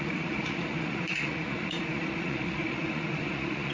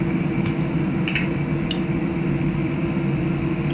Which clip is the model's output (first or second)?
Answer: first